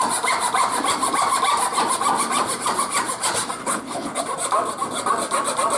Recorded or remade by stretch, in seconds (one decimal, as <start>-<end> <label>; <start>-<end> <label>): 0.0-3.6 recorded; 3.6-4.2 remade; 4.2-5.8 recorded